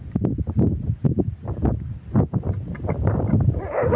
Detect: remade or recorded remade